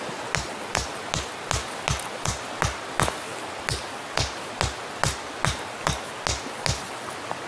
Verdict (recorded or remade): recorded